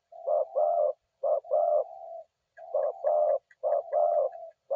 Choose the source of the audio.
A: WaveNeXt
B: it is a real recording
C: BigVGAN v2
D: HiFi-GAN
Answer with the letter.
A